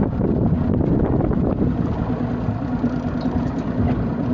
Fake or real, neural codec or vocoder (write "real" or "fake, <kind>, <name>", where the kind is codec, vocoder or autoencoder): real